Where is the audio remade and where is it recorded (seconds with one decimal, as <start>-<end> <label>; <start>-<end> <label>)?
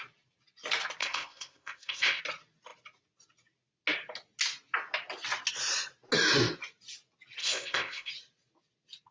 0.0-1.0 recorded; 1.0-2.2 remade; 2.2-7.4 recorded; 7.4-8.1 remade; 8.1-9.1 recorded